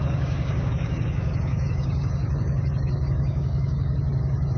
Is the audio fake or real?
fake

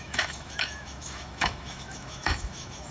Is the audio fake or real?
fake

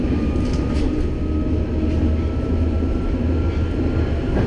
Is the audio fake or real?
real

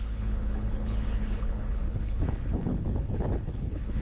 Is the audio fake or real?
fake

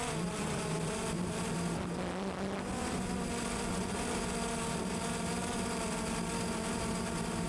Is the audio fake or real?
real